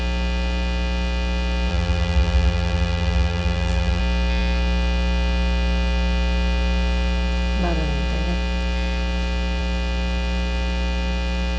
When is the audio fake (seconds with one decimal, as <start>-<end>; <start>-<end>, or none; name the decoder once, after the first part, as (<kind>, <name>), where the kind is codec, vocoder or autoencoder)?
1.7-4.0 (vocoder, BigVGAN v2)